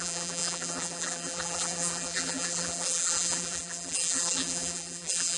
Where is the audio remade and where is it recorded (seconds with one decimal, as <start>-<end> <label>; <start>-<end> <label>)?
0.0-5.4 remade